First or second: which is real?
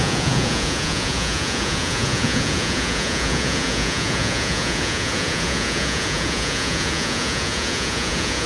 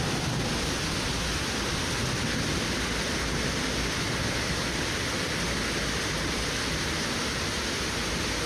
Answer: second